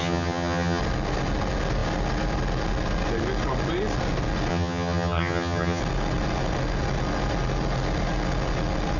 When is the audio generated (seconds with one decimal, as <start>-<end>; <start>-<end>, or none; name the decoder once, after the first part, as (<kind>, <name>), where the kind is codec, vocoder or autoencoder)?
0.0-0.8 (vocoder, HiFi-GAN); 4.5-5.8